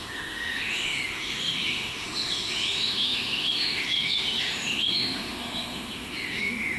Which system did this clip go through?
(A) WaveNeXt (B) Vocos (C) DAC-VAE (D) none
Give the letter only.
C